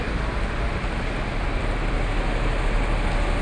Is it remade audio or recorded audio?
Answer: recorded